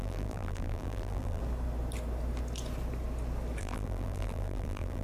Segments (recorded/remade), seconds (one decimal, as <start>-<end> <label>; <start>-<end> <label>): 0.0-1.4 remade; 1.4-3.6 recorded; 3.6-5.0 remade